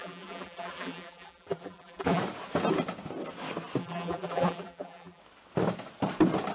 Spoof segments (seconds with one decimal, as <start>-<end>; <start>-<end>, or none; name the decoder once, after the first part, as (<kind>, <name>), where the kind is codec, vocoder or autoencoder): 0.0-2.2 (vocoder, BigVGAN v2); 3.8-5.2